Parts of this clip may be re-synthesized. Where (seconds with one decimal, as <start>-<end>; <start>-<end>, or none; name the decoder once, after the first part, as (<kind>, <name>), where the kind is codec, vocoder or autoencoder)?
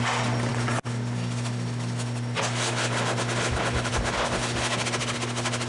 none